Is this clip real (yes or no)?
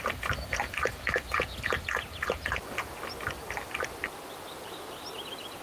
yes